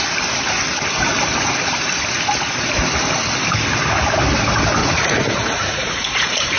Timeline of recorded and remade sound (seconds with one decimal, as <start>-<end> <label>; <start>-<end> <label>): 0.0-4.8 recorded; 4.8-6.6 remade